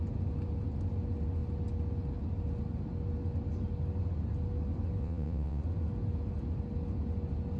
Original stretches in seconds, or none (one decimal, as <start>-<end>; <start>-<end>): 0.0-5.0; 5.6-7.6